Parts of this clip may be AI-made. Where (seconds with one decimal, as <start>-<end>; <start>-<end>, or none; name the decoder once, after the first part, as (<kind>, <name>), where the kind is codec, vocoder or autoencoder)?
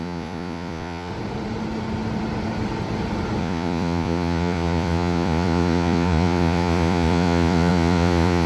0.0-1.1 (vocoder, Vocos); 3.4-8.5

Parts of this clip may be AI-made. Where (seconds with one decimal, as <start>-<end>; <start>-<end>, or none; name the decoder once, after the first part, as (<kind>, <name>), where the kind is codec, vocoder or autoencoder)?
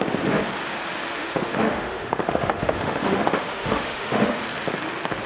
1.2-4.4 (autoencoder, DAC-VAE)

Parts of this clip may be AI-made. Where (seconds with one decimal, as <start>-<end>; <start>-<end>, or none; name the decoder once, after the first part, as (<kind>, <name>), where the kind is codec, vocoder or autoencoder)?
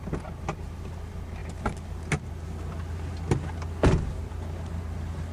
none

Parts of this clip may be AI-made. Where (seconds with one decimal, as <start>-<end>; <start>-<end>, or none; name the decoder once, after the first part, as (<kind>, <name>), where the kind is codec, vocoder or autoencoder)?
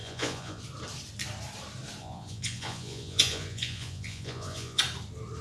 0.0-0.6 (vocoder, Vocos); 2.0-4.8